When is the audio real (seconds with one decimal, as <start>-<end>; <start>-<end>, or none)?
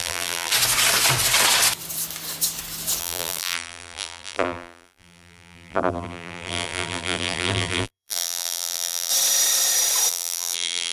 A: 0.5-3.0; 9.1-10.1